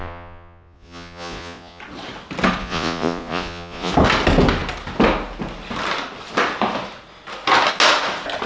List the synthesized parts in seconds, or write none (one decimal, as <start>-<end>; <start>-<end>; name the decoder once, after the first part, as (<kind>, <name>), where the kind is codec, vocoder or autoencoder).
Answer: 0.0-1.8 (vocoder, Vocos); 2.6-3.9